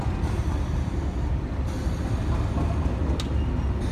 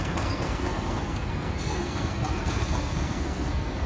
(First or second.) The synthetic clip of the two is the second